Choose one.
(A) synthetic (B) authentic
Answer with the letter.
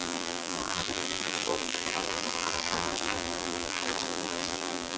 A